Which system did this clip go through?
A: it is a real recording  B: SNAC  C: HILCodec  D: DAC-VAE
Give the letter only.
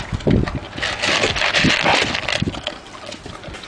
A